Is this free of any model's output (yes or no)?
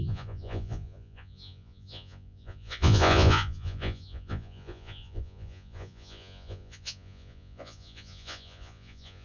no